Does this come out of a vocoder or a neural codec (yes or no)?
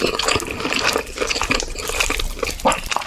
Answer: no